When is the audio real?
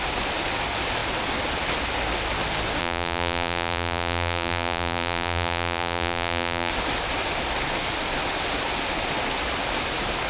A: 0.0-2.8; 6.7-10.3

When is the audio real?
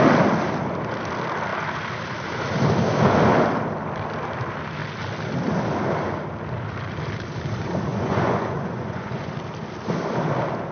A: 0.0-7.9; 9.3-10.7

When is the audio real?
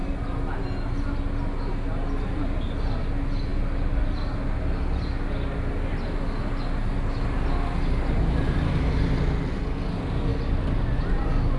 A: 0.0-11.6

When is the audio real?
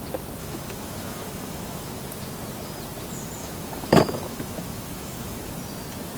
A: 0.0-0.4; 1.9-3.4; 5.5-6.2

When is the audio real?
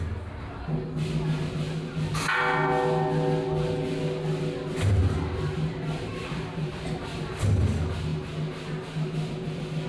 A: 0.0-5.0; 7.6-9.9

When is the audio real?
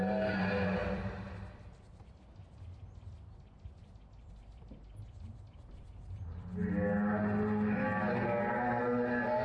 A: 0.0-9.4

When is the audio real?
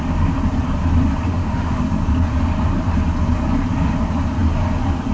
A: 0.0-1.3; 1.8-5.1